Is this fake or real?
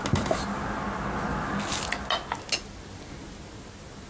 real